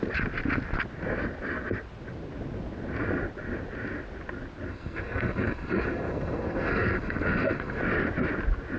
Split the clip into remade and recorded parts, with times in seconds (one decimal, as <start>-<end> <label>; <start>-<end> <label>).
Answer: 0.0-4.7 recorded; 4.7-7.8 remade; 7.8-8.8 recorded

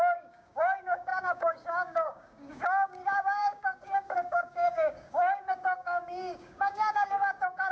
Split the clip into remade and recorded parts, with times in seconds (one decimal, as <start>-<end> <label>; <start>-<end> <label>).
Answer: 0.0-7.7 remade

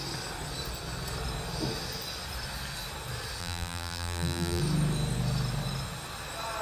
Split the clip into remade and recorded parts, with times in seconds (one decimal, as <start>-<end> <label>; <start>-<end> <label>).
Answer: 0.0-3.4 recorded; 3.4-4.6 remade; 4.6-6.6 recorded

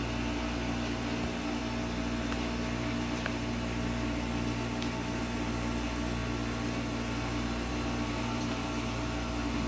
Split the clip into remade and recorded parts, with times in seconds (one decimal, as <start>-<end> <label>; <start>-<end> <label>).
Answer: 0.0-9.7 recorded

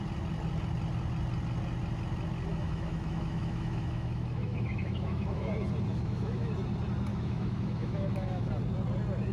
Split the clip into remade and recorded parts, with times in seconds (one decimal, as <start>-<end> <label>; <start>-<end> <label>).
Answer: 0.0-2.5 recorded; 2.5-5.5 remade; 5.5-5.9 recorded; 5.9-6.5 remade; 6.5-7.1 recorded; 7.1-8.5 remade; 8.5-9.3 recorded

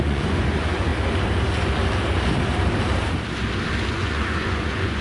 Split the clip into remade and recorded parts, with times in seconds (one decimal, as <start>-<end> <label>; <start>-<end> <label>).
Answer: 0.0-0.9 remade; 0.9-3.9 recorded; 3.9-5.0 remade